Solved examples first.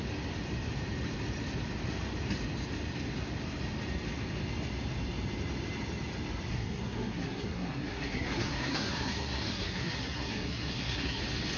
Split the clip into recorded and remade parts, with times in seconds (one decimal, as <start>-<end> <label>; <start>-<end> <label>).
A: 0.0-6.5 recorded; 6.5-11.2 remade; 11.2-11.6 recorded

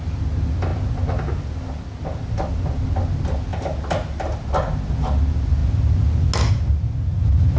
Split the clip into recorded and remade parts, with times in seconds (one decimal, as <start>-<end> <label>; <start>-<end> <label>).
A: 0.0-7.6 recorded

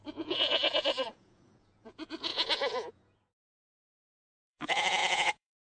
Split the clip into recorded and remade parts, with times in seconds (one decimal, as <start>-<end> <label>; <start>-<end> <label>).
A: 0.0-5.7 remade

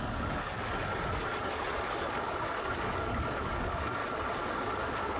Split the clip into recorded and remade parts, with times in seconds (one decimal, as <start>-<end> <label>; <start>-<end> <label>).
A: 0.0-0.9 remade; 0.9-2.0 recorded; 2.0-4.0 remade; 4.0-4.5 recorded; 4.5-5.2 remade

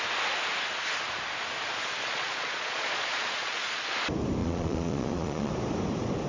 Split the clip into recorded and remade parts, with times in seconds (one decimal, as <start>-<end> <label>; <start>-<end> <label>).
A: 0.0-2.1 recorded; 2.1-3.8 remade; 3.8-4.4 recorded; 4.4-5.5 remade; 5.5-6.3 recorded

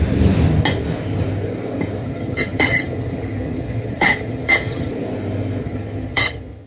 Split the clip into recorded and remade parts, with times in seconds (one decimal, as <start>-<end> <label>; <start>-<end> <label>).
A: 0.0-2.0 recorded; 2.0-4.9 remade; 4.9-5.6 recorded; 5.6-6.7 remade

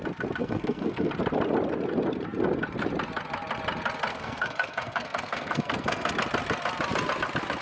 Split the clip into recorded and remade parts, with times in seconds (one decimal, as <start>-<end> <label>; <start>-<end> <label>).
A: 0.0-0.4 recorded; 0.4-1.1 remade; 1.1-4.1 recorded; 4.1-6.1 remade; 6.1-7.6 recorded

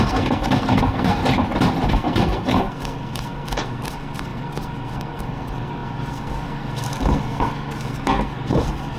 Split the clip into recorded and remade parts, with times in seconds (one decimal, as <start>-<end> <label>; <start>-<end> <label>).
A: 0.0-1.2 remade; 1.2-1.9 recorded; 1.9-9.0 remade